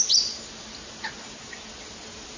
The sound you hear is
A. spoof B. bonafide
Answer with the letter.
B